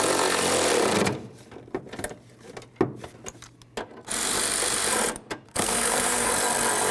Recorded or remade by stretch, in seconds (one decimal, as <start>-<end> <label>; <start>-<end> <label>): 0.0-5.5 recorded; 5.5-6.3 remade; 6.3-6.9 recorded